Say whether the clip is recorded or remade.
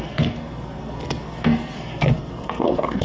remade